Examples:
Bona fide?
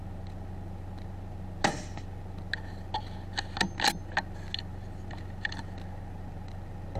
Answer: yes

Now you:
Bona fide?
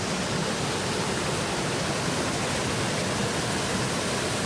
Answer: yes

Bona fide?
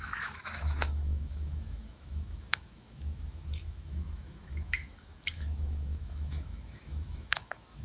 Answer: no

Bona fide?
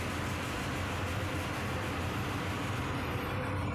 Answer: yes